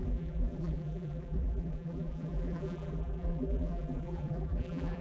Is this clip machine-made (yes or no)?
yes